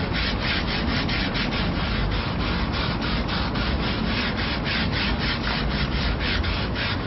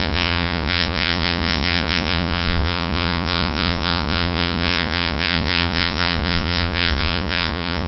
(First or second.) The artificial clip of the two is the second